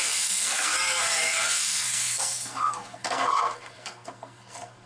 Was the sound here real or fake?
fake